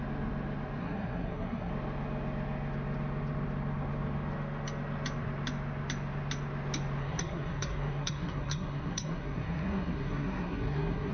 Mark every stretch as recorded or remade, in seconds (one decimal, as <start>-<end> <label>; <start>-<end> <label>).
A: 0.0-0.8 recorded; 0.8-1.7 remade; 1.7-7.0 recorded; 7.0-11.1 remade